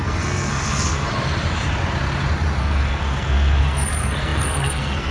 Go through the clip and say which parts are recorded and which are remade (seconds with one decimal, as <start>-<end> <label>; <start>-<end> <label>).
0.0-1.1 remade; 1.1-2.6 recorded; 2.6-5.1 remade